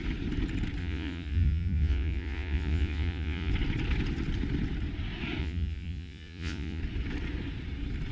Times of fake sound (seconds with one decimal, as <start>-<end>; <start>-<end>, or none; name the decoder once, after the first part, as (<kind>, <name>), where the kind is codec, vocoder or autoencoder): 0.8-3.5 (vocoder, Vocos); 5.4-6.8